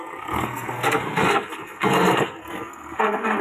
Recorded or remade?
remade